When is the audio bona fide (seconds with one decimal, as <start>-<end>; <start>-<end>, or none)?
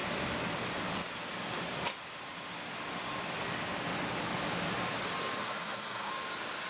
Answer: 0.0-5.4; 6.1-6.7